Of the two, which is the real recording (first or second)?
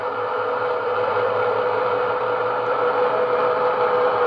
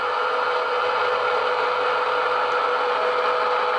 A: second